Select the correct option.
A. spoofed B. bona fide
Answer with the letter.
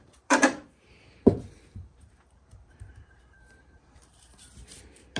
A